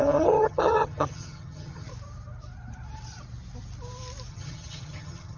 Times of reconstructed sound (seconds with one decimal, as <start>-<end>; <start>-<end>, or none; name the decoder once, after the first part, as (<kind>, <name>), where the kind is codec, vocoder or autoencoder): 0.0-1.9 (vocoder, HiFi-GAN); 4.3-5.4